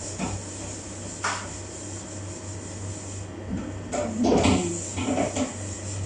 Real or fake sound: real